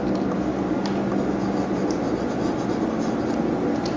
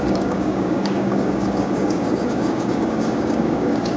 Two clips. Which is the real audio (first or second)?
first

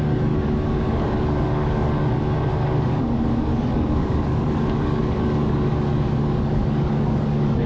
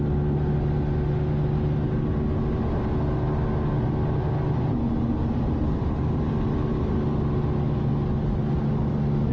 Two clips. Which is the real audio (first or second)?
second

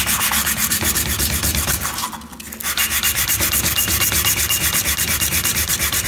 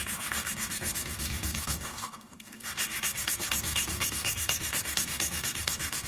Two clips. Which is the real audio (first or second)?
first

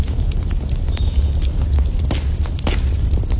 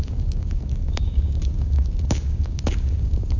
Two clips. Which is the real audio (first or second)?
first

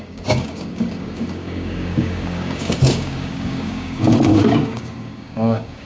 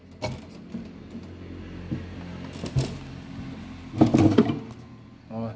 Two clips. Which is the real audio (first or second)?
second